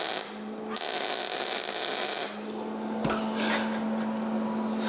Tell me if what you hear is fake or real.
real